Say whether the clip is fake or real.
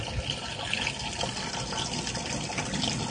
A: real